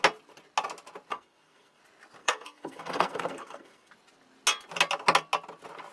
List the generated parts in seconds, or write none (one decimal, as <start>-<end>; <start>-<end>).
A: 1.1-1.8; 2.2-3.9